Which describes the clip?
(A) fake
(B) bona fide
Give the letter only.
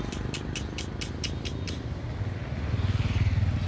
B